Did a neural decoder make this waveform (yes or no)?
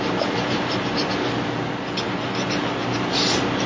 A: no